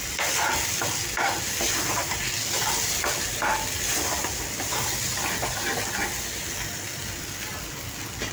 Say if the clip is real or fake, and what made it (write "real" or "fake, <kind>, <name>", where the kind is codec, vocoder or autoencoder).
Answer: real